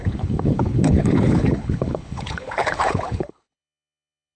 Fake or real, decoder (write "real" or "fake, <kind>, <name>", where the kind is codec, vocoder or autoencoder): fake, codec, HILCodec